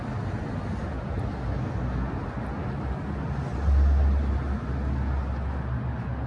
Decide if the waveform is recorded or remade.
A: recorded